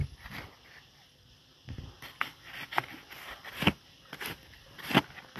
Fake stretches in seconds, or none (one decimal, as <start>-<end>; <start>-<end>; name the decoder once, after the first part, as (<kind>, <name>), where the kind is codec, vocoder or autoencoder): none